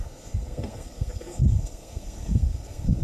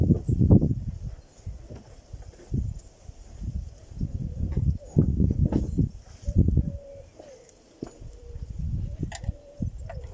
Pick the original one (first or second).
second